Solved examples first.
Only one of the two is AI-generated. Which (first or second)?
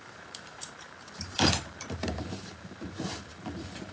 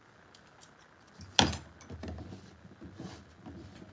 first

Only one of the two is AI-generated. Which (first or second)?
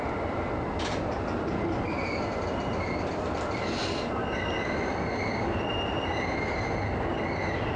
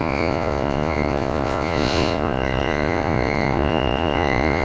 second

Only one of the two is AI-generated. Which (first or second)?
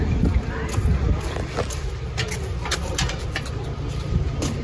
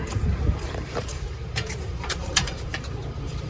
second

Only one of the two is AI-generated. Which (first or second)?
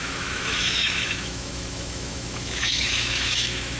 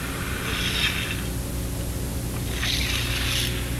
first